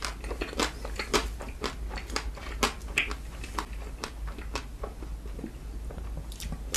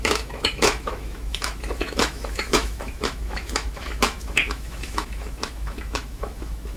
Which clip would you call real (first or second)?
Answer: first